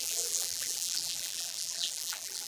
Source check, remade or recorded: remade